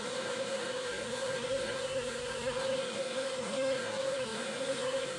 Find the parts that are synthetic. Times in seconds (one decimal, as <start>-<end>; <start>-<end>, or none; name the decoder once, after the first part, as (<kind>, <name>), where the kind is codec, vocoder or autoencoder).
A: 0.0-5.2 (codec, SNAC)